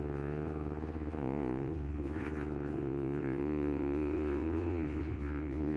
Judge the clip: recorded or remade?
remade